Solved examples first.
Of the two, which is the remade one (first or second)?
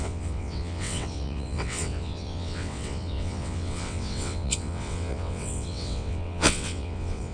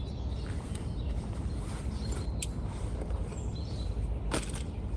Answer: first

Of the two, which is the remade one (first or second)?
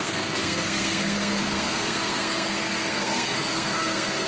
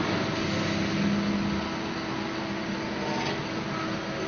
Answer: first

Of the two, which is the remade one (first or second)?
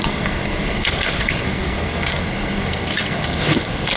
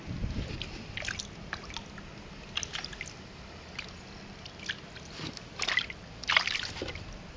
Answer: first